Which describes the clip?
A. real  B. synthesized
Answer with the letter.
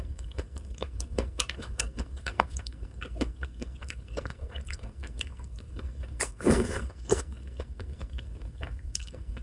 B